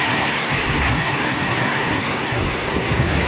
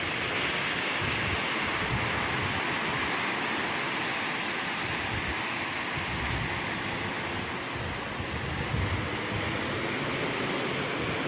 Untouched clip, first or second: second